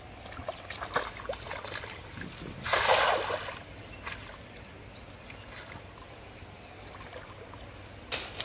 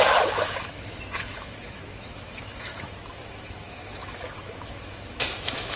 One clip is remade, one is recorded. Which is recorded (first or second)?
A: first